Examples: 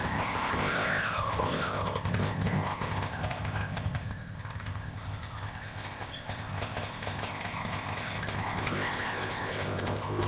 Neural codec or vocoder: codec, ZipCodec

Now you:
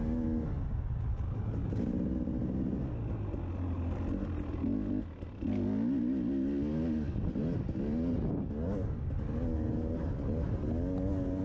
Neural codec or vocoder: none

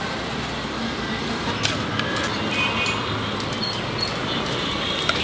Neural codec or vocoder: none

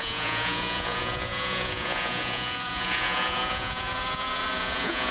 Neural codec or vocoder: vocoder, Vocos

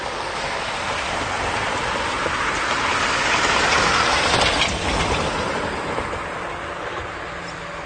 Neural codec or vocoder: none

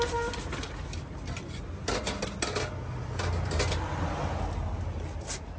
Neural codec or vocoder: none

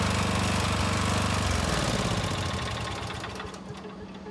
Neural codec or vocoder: none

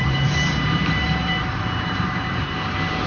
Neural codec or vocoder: vocoder, BigVGAN v2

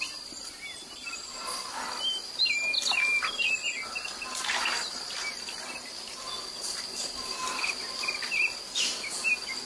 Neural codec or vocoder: none